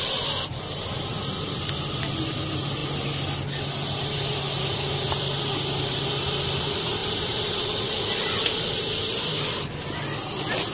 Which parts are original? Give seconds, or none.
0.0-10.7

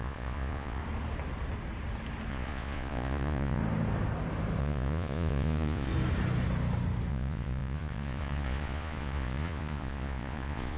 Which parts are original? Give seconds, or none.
0.8-2.3; 3.6-4.6; 5.9-7.1

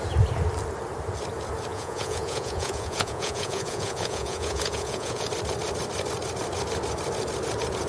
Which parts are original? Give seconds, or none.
0.0-1.7; 5.3-7.9

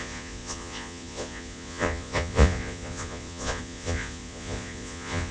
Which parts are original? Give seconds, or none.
none

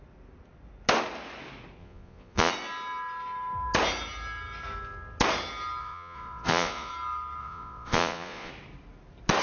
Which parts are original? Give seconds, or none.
0.0-1.8; 2.5-5.8; 6.9-7.4; 8.5-9.4

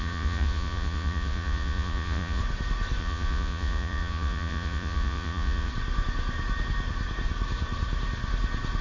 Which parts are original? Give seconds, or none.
2.4-3.0; 5.7-8.8

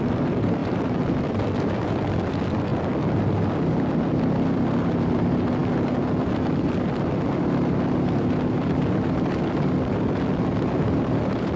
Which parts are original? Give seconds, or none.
0.0-11.6

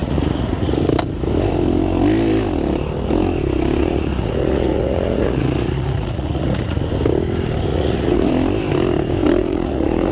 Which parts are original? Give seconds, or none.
0.8-3.8; 6.8-7.7; 8.3-9.4